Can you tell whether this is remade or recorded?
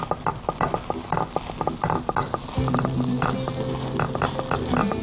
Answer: recorded